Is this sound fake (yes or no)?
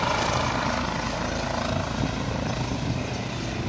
no